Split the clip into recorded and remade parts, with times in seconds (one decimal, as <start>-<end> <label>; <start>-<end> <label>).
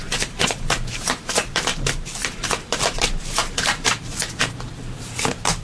0.0-5.6 remade